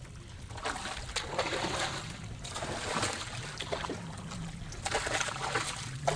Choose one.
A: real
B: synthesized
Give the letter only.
A